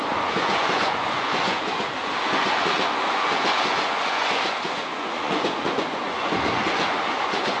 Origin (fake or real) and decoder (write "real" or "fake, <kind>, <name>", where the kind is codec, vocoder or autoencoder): fake, vocoder, Vocos